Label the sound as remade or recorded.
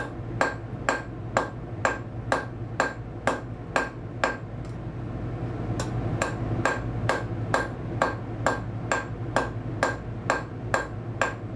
recorded